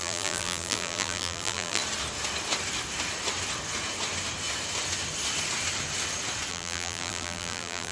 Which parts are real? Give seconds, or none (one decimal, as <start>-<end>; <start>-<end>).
1.8-6.5